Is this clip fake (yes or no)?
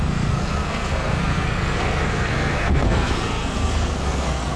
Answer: yes